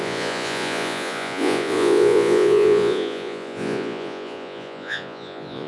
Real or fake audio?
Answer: fake